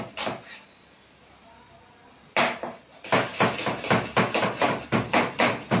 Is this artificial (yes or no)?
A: no